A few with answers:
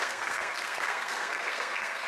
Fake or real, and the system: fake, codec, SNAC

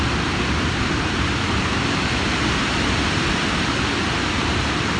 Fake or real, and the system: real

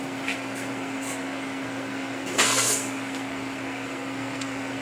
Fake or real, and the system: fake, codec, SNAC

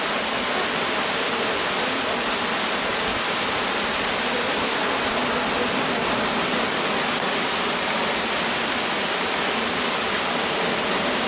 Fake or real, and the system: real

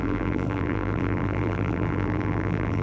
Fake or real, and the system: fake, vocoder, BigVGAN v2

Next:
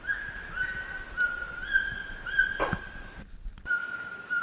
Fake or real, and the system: real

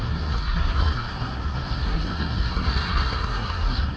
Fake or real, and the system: fake, codec, SNAC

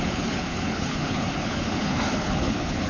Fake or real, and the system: fake, codec, HILCodec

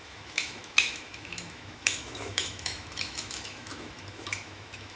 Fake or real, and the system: fake, autoencoder, DAC-VAE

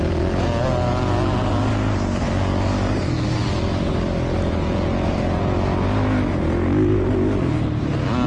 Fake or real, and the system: real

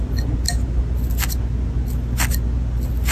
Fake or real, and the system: real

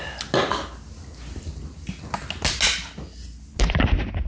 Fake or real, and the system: real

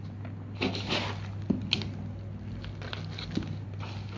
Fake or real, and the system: real